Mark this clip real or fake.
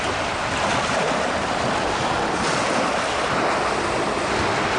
real